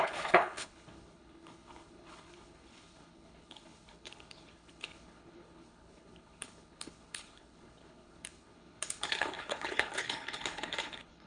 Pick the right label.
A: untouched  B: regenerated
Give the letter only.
B